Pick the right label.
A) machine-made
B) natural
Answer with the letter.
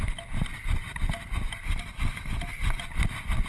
B